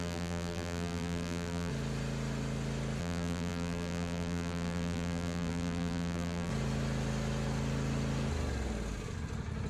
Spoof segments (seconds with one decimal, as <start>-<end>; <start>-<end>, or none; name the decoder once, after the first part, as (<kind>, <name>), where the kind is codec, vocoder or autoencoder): 0.0-1.7 (vocoder, BigVGAN v2); 3.0-6.5